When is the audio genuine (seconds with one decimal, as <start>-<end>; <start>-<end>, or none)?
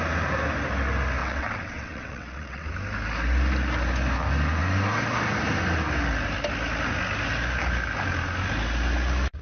0.0-1.2; 2.7-9.4